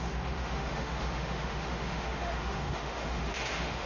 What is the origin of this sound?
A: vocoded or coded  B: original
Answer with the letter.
A